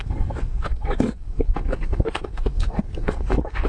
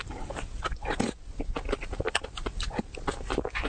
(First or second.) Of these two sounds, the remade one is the first